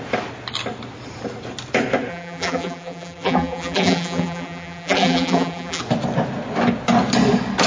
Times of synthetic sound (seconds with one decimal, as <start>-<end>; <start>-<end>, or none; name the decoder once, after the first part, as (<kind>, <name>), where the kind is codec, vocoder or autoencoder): 2.1-5.8 (vocoder, BigVGAN v2)